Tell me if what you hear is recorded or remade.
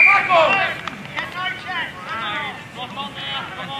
recorded